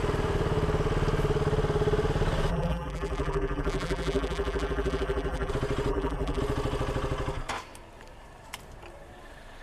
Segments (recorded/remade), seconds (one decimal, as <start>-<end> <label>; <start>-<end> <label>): 0.0-2.5 recorded; 2.5-5.5 remade; 5.5-5.9 recorded; 5.9-6.4 remade; 6.4-9.6 recorded